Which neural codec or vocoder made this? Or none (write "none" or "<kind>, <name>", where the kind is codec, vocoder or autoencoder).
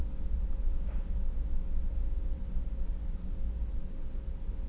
none